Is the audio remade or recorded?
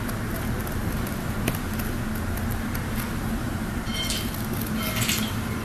recorded